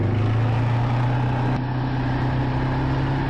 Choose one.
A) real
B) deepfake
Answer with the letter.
A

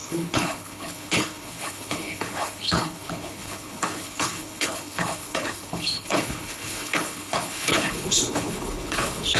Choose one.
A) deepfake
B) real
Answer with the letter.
A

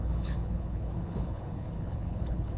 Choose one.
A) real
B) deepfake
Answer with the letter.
B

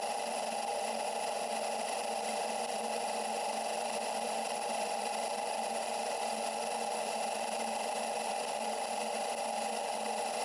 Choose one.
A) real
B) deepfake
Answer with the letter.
A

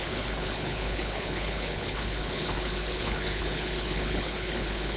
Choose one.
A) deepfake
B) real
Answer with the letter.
A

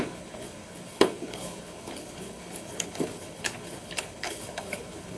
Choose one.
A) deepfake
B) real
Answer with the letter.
A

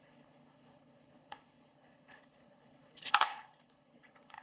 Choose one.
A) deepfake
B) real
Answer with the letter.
A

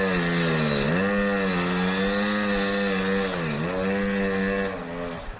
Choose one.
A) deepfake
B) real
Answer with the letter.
B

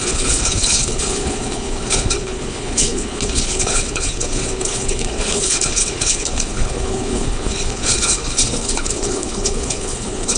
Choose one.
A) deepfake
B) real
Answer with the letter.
A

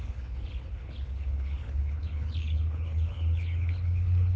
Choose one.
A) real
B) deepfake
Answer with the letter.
B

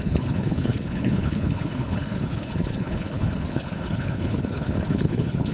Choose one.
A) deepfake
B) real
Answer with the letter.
A